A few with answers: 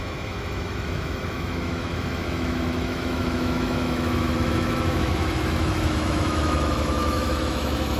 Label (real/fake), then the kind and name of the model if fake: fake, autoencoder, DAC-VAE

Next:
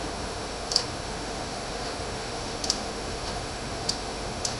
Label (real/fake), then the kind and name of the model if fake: fake, autoencoder, DAC-VAE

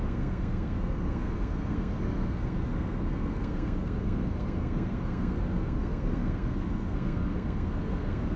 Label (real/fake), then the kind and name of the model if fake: fake, codec, SNAC